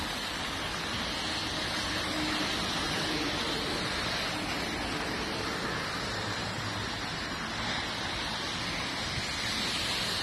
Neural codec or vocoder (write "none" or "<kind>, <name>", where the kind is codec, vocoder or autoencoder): none